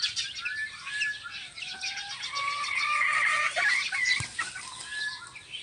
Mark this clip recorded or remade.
recorded